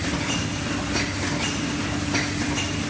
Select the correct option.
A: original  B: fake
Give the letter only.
A